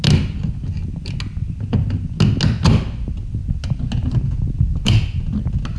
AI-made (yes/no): no